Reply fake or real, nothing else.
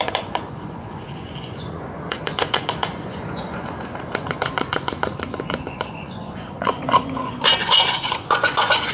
fake